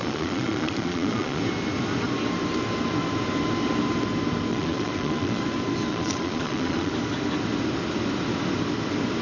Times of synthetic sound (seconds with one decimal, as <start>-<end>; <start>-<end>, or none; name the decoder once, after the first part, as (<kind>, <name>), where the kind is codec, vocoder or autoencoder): 0.0-1.4 (vocoder, Vocos); 4.5-5.4; 5.9-6.9

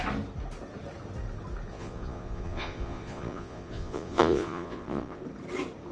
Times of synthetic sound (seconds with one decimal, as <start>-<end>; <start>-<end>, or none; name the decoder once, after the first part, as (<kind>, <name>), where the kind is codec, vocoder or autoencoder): 1.7-5.2 (vocoder, Vocos)